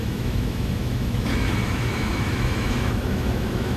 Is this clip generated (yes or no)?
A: yes